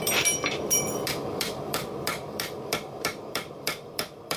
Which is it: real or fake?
fake